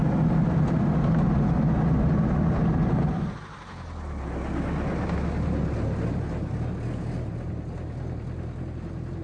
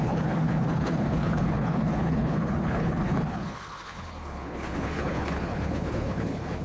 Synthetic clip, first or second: second